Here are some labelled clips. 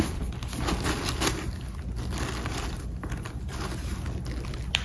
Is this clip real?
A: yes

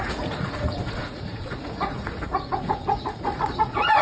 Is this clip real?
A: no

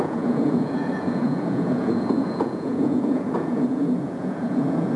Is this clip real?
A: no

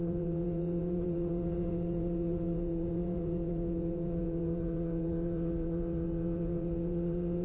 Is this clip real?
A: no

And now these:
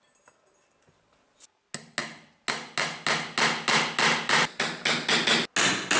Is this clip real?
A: yes